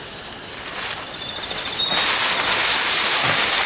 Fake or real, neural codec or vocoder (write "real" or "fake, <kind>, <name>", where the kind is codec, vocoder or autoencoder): real